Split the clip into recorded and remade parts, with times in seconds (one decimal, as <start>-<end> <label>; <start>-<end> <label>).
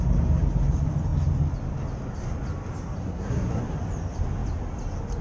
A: 0.0-3.0 recorded; 3.0-3.6 remade; 3.6-5.2 recorded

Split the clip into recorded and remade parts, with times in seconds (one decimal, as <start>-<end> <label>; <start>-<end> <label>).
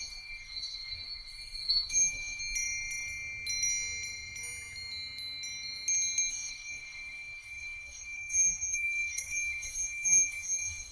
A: 0.0-2.4 remade; 2.4-6.3 recorded; 6.3-10.9 remade